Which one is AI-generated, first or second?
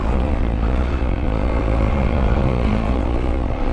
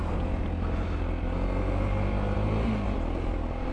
first